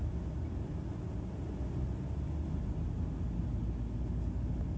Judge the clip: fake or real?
real